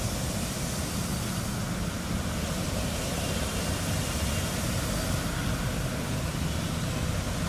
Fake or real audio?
real